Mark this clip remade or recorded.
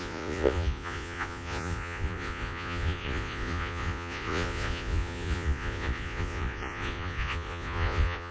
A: remade